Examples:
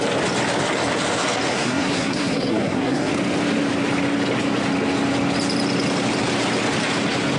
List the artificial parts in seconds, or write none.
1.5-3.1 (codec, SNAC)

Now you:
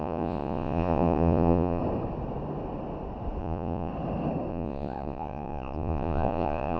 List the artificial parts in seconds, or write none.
0.0-1.8 (vocoder, Vocos); 3.4-3.9; 4.5-6.8

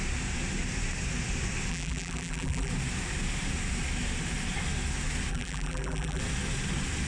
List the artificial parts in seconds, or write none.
1.7-2.7 (vocoder, BigVGAN v2); 5.3-6.2

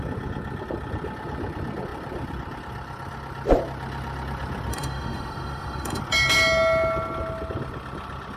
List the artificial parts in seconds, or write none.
4.7-6.0 (autoencoder, DAC-VAE)

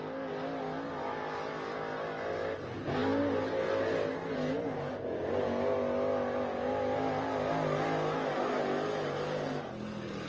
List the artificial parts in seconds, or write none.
none

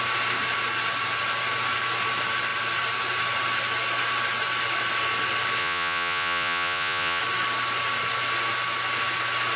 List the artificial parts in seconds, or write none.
5.6-7.2 (vocoder, Vocos)